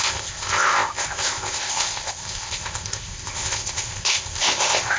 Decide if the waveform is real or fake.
fake